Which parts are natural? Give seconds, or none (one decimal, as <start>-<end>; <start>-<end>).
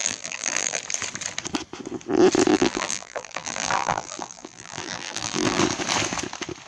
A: 0.8-2.5; 5.6-6.7